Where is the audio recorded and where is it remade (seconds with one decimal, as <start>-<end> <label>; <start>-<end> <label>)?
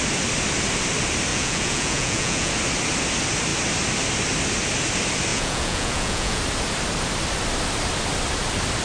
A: 0.0-1.3 recorded; 1.3-2.5 remade; 2.5-5.3 recorded; 5.3-6.4 remade; 6.4-8.8 recorded